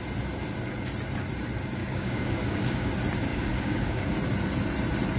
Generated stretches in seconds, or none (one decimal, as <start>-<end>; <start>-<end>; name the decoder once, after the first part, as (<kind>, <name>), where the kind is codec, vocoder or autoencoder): 1.8-2.9 (codec, DAC); 3.3-4.1